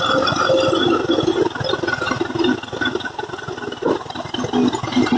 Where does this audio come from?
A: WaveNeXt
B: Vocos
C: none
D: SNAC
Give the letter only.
C